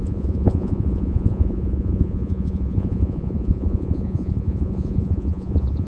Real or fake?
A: fake